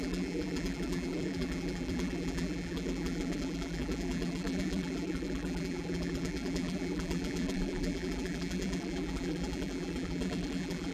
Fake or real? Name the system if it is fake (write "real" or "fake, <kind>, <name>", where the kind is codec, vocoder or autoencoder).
fake, vocoder, BigVGAN v2